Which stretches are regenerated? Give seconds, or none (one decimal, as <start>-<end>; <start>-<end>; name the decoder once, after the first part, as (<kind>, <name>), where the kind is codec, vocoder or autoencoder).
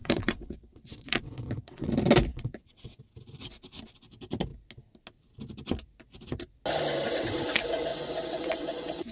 0.0-1.9 (vocoder, WaveNeXt); 2.3-3.0; 7.9-9.1